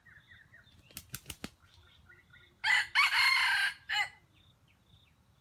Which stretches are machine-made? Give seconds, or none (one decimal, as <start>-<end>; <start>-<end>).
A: none